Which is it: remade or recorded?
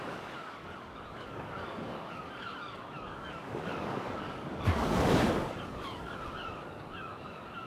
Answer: remade